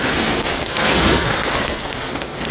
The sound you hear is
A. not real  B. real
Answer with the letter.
A